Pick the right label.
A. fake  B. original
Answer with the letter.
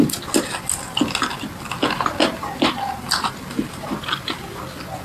B